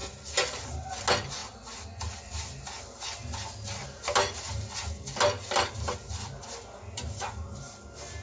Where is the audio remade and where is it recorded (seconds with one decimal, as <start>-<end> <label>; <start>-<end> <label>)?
0.0-8.2 recorded